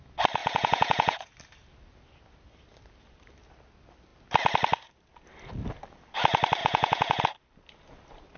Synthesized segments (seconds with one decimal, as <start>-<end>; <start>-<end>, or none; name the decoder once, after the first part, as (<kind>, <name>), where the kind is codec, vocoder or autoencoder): 0.4-1.3 (vocoder, Vocos); 6.6-7.2